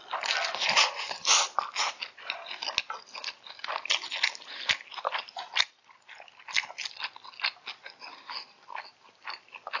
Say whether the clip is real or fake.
real